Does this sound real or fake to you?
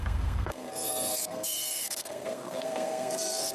fake